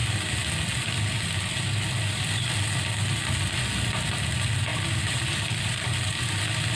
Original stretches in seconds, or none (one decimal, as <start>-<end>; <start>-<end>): 0.0-3.9